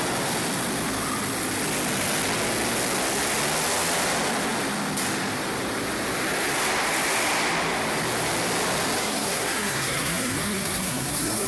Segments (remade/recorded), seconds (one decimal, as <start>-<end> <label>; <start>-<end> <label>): 0.0-9.0 recorded; 9.0-11.5 remade